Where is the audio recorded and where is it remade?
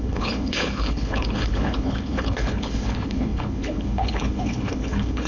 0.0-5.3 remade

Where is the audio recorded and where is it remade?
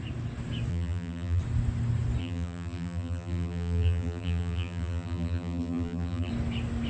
0.0-0.7 recorded; 0.7-1.4 remade; 1.4-2.2 recorded; 2.2-6.3 remade; 6.3-6.9 recorded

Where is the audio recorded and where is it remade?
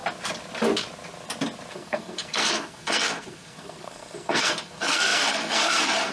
0.0-1.7 recorded; 1.7-6.1 remade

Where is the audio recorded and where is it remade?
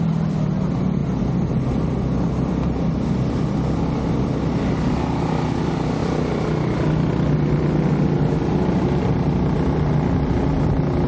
0.0-11.1 recorded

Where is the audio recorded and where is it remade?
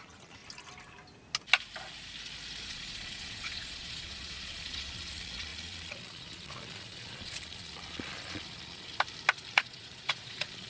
0.0-0.4 remade; 0.4-2.7 recorded; 2.7-8.9 remade; 8.9-9.5 recorded; 9.5-10.7 remade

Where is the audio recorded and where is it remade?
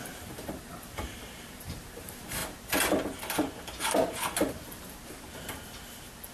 0.0-2.4 remade; 2.4-6.3 recorded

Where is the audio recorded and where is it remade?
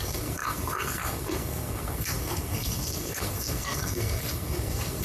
0.0-5.0 remade